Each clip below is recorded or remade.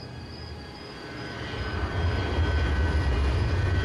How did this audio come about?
recorded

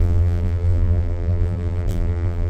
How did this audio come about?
remade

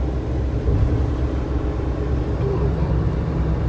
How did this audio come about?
recorded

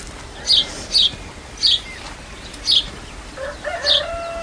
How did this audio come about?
recorded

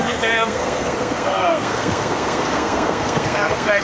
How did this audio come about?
remade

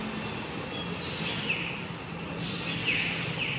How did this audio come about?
recorded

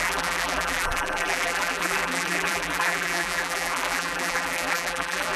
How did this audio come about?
remade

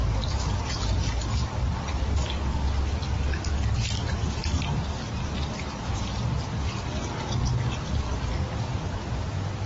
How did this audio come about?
recorded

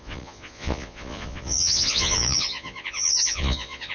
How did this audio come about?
remade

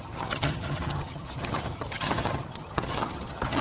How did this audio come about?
remade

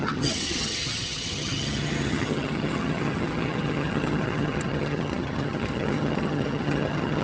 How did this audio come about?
remade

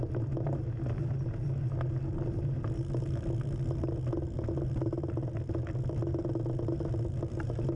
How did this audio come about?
recorded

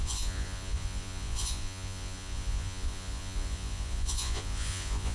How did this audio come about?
remade